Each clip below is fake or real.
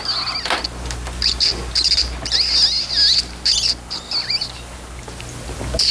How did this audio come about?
real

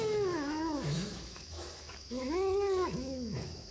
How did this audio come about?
fake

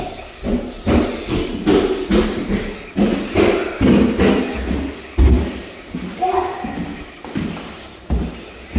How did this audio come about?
real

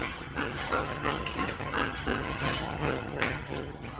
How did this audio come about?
fake